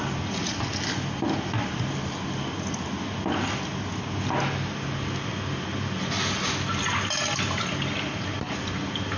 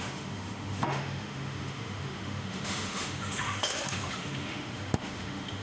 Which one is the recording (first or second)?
first